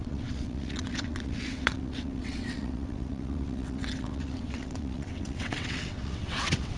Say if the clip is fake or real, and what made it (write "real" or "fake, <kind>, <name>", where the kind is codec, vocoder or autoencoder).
fake, vocoder, WaveNeXt